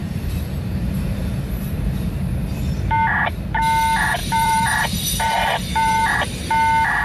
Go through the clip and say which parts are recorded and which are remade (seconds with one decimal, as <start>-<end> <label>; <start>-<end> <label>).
0.0-1.9 remade; 1.9-4.2 recorded; 4.2-6.2 remade; 6.2-7.0 recorded